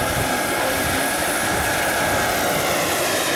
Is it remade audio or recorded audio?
recorded